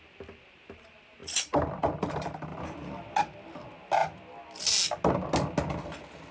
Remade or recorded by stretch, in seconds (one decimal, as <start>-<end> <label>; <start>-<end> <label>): 0.0-6.3 recorded